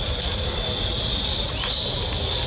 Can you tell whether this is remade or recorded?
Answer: recorded